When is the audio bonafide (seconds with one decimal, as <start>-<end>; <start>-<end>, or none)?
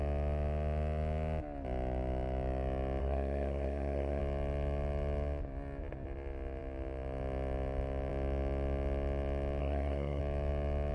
0.0-3.0; 4.2-9.6; 10.2-10.9